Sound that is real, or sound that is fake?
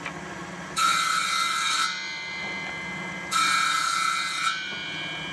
real